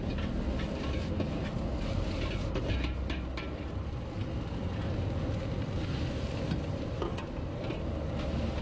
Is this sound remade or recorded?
recorded